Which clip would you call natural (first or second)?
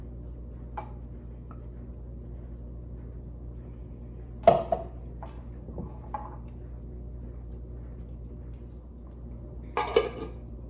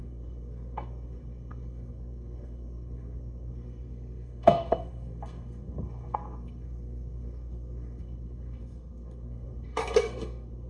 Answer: first